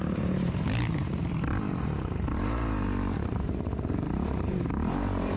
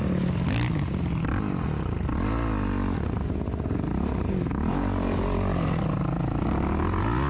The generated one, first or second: first